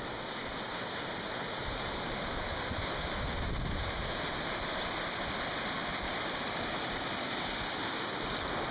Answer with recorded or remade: recorded